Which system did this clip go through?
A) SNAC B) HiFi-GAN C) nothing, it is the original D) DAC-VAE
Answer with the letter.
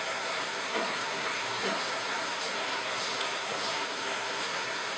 A